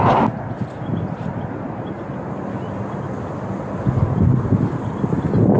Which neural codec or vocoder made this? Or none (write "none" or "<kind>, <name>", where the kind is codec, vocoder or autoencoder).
none